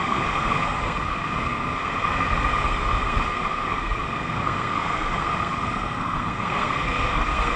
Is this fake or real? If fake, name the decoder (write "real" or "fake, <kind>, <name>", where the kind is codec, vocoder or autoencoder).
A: fake, codec, SNAC